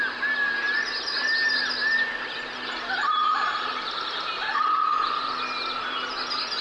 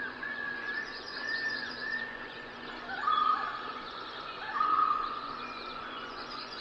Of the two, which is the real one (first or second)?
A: first